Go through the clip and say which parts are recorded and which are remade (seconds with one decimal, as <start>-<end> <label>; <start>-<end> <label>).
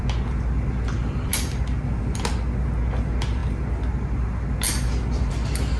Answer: 0.0-5.8 recorded